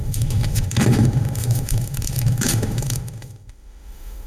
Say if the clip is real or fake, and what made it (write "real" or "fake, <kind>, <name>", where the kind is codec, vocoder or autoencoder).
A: fake, autoencoder, DAC-VAE